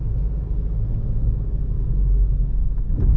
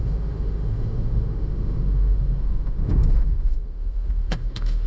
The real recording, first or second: first